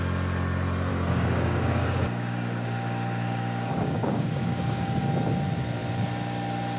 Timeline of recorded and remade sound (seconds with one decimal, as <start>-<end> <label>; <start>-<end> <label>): 0.0-0.9 recorded; 0.9-5.0 remade; 5.0-6.8 recorded